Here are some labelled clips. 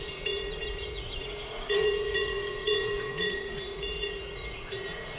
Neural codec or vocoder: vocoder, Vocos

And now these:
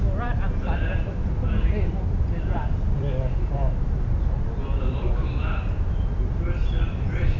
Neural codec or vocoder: vocoder, BigVGAN v2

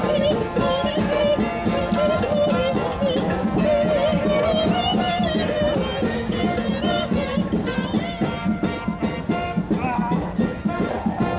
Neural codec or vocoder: none